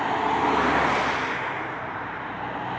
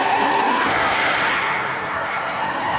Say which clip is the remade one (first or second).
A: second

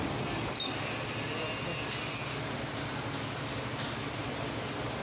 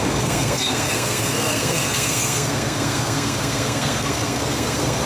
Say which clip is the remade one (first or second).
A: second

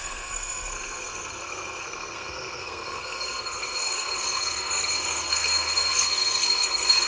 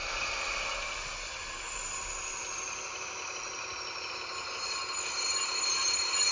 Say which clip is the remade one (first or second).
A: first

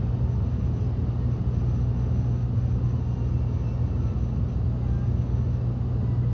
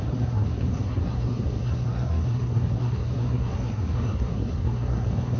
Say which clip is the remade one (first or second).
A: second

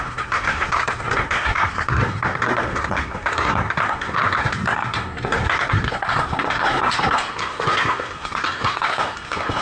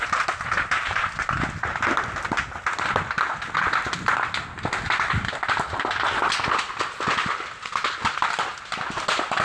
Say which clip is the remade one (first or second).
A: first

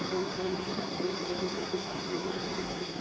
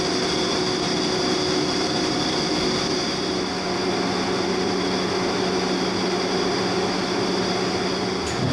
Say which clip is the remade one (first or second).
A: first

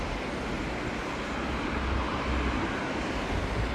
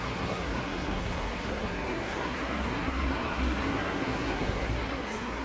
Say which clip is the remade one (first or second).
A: second